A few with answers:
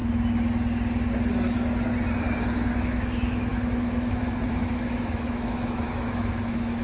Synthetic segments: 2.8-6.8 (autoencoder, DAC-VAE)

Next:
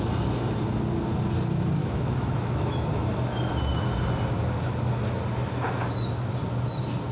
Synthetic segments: 1.8-2.9 (autoencoder, DAC-VAE)

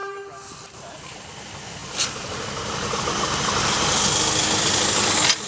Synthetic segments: none

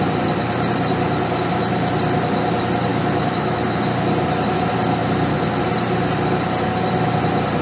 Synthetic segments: 2.9-3.6 (autoencoder, DAC-VAE)

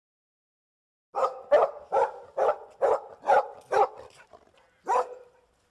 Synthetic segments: none

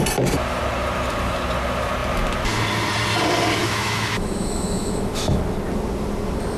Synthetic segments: 3.6-5.4 (autoencoder, DAC-VAE)

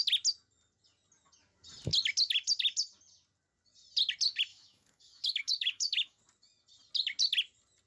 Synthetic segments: 4.5-6.2 (autoencoder, DAC-VAE)